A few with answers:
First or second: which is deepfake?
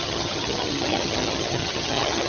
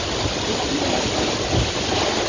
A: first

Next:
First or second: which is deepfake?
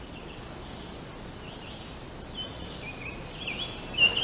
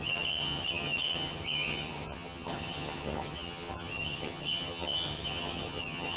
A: second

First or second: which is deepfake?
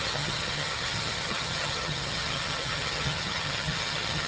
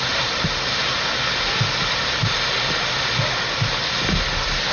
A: first